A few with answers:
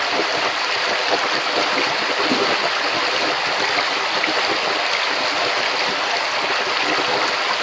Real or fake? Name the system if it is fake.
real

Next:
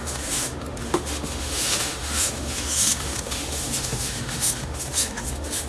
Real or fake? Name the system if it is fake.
fake, autoencoder, DAC-VAE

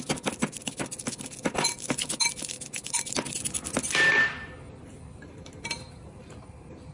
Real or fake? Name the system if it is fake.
real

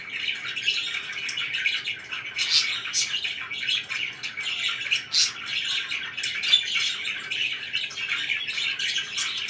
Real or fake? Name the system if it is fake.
real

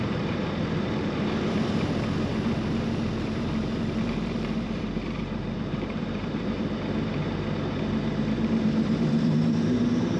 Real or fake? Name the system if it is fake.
fake, vocoder, BigVGAN v2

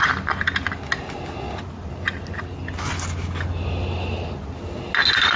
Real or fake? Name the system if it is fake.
real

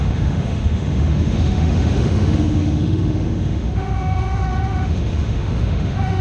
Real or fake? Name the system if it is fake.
fake, autoencoder, DAC-VAE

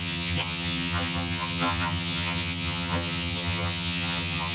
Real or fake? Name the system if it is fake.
fake, vocoder, HiFi-GAN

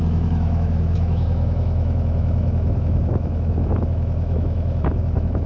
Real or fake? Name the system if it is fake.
fake, autoencoder, DAC-VAE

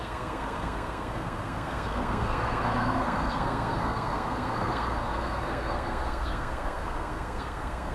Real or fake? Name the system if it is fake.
fake, codec, SNAC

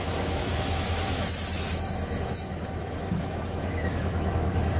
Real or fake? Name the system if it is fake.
fake, autoencoder, DAC-VAE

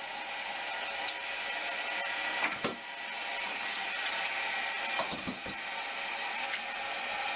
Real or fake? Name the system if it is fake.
real